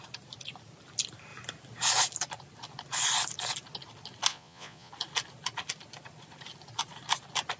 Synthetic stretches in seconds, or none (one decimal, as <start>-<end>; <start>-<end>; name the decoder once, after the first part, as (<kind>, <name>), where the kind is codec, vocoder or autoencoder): 4.3-4.9 (vocoder, Vocos)